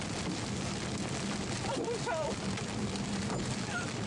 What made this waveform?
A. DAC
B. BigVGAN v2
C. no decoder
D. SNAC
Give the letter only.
C